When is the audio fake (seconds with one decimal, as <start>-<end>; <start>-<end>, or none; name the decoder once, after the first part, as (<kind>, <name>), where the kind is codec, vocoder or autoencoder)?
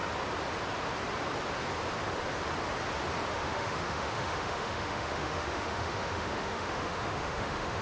3.3-7.8 (autoencoder, DAC-VAE)